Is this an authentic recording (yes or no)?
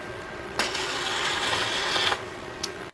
no